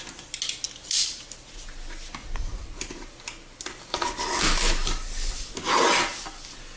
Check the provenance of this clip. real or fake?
real